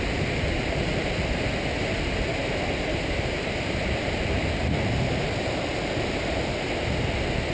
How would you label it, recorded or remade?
recorded